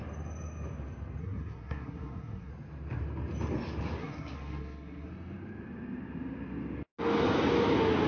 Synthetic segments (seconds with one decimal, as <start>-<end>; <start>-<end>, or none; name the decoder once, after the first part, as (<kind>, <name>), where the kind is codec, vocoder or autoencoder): 1.2-2.5 (codec, SNAC); 4.0-5.1